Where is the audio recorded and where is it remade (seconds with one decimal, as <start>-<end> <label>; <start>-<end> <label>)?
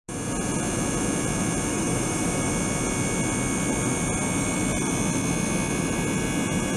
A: 0.0-1.7 recorded; 1.7-2.5 remade; 2.5-6.8 recorded